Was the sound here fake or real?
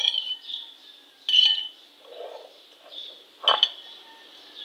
real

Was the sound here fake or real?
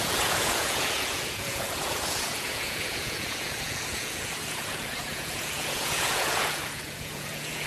fake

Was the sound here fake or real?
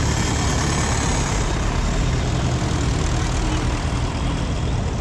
real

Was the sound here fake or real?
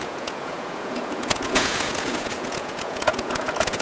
fake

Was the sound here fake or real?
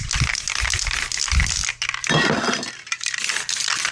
real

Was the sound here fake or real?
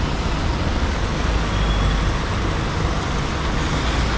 real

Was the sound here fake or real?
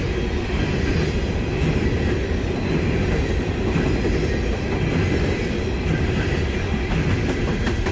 real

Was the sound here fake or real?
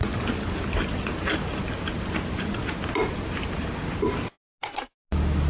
real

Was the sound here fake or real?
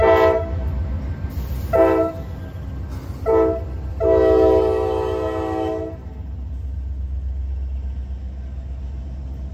real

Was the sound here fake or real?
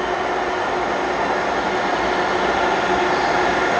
real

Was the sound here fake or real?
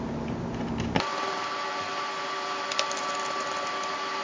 real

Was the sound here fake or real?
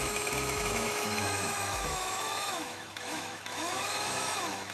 fake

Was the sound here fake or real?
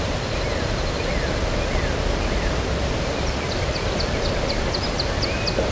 real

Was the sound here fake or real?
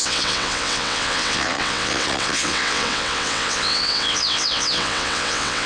fake